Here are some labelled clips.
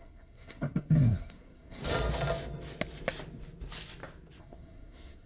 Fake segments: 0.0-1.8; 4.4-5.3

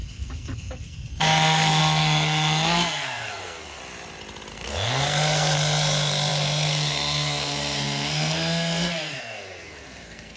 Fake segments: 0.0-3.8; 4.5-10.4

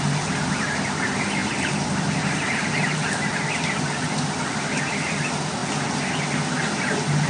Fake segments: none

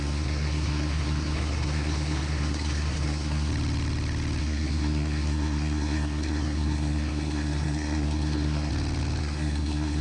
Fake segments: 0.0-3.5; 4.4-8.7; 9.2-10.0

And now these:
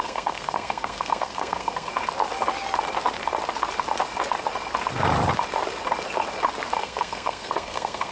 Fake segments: 0.0-1.9; 6.8-8.1